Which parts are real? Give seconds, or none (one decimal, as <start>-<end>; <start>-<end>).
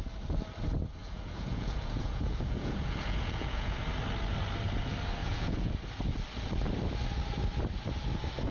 0.0-1.0; 3.8-5.2; 5.8-8.5